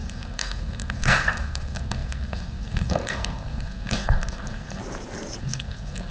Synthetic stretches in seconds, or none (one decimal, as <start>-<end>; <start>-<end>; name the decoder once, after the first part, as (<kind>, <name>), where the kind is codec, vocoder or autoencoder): 0.0-4.8 (codec, SNAC); 5.4-6.1